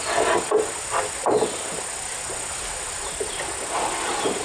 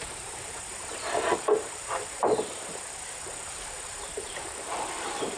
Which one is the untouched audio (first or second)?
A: first